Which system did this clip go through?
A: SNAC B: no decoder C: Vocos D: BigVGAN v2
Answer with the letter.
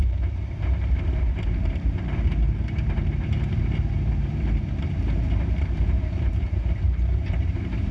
D